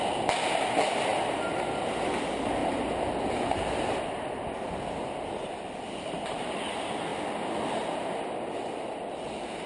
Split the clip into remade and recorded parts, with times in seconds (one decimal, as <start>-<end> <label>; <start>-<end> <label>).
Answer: 0.0-9.7 recorded